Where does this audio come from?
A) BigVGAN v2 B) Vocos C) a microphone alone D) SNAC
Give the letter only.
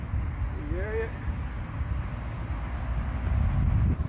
C